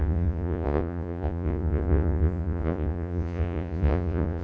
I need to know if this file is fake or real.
fake